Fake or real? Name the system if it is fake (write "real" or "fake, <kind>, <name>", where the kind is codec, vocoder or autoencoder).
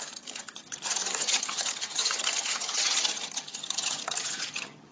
fake, vocoder, HiFi-GAN